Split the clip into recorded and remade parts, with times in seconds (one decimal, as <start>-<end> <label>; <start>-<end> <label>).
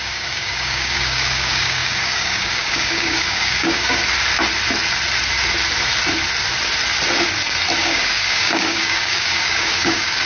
0.0-4.0 remade; 4.0-7.8 recorded; 7.8-10.3 remade